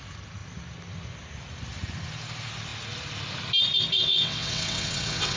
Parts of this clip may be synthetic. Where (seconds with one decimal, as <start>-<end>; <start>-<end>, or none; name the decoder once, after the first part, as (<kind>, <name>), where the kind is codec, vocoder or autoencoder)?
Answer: 4.0-5.4 (vocoder, WaveNeXt)